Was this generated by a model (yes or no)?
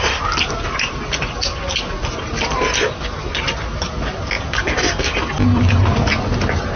no